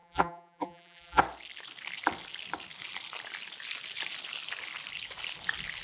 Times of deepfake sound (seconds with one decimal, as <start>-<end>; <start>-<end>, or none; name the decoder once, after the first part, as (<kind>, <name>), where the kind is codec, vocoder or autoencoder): 0.0-1.2 (vocoder, BigVGAN v2)